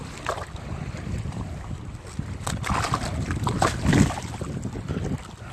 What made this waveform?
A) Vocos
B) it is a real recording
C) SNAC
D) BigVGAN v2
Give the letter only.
B